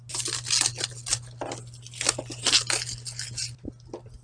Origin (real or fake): real